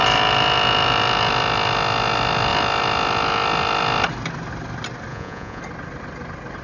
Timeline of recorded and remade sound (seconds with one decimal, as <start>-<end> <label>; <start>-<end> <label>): 0.0-5.1 recorded; 5.1-5.6 remade; 5.6-6.6 recorded